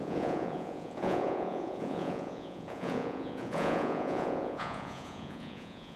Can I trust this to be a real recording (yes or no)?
no